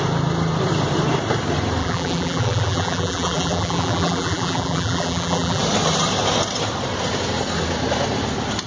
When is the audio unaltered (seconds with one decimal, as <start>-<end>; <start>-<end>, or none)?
0.0-1.8; 5.6-8.7